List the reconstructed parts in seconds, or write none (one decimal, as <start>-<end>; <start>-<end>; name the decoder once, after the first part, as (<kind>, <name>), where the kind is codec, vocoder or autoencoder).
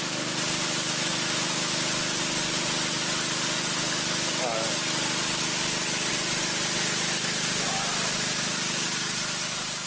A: 6.1-8.5 (vocoder, BigVGAN v2)